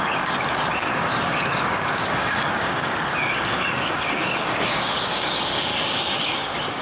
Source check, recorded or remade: remade